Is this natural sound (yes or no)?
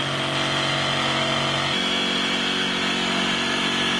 yes